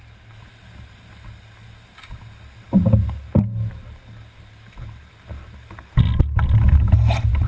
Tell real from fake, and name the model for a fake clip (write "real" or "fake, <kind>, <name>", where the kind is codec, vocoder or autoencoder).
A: real